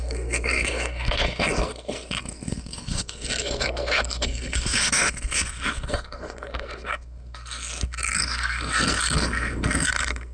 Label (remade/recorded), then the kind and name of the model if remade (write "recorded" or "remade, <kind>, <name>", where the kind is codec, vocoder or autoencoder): remade, codec, SNAC